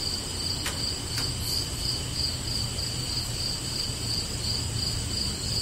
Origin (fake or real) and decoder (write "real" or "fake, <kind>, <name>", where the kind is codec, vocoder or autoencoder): real